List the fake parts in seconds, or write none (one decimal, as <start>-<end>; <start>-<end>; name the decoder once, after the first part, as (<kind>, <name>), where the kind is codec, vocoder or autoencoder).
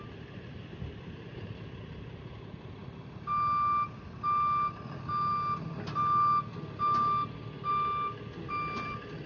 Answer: none